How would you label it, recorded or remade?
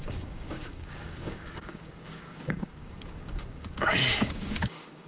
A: remade